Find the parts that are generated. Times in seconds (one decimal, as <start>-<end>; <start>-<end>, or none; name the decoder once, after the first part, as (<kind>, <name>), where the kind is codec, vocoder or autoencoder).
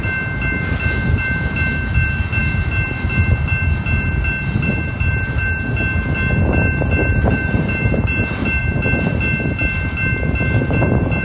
7.0-8.6 (vocoder, BigVGAN v2)